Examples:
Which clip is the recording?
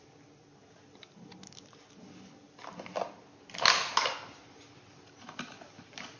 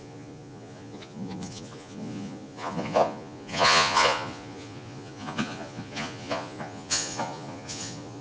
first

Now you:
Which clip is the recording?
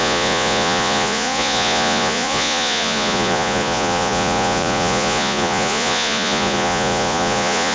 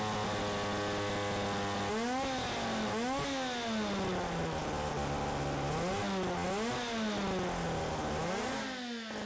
second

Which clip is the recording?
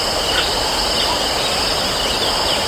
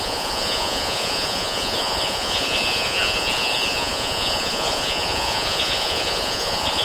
first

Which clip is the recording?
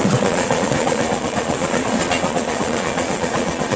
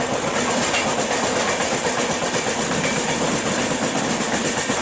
second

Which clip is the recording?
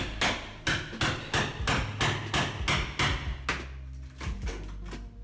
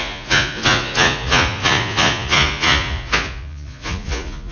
first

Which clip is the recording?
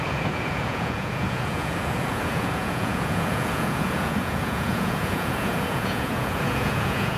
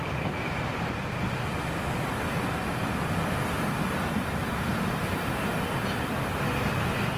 second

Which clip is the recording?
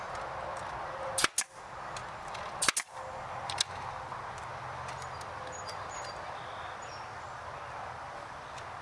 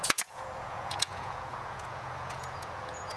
first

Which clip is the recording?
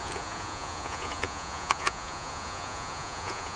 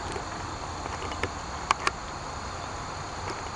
second